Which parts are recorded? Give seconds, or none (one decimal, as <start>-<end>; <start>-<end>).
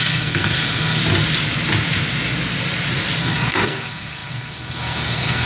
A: 1.0-3.2